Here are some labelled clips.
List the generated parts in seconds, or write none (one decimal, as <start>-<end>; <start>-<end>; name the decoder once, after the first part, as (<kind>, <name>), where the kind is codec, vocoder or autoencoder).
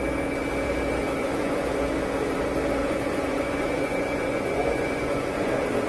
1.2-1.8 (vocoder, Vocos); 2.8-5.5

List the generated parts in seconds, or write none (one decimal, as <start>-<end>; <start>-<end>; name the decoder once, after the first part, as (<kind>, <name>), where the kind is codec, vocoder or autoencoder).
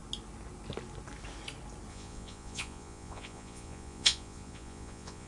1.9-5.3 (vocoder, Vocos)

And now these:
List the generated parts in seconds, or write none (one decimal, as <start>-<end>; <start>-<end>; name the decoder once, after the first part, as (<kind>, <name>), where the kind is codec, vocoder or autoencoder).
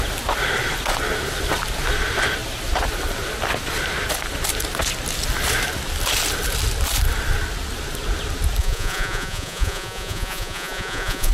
8.6-11.3 (vocoder, Vocos)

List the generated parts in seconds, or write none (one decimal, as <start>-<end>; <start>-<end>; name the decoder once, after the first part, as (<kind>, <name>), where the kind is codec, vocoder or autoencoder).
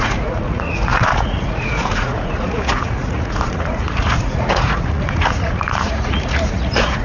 0.0-7.0 (vocoder, Vocos)